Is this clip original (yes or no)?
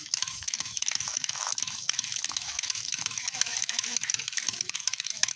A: no